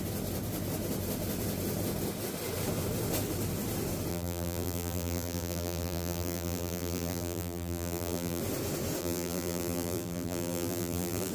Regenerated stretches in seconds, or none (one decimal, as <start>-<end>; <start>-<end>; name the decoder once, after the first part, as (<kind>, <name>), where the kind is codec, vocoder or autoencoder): 4.1-8.4 (vocoder, BigVGAN v2); 9.0-11.3